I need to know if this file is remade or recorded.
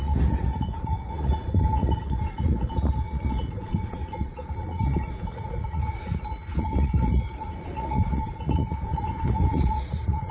remade